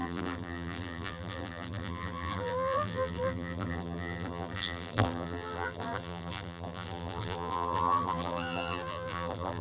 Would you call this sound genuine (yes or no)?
no